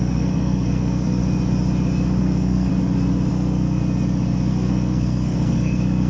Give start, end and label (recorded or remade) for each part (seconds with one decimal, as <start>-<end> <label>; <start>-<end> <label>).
0.0-1.2 remade; 1.2-2.2 recorded; 2.2-2.7 remade; 2.7-3.3 recorded; 3.3-3.8 remade; 3.8-4.5 recorded; 4.5-6.1 remade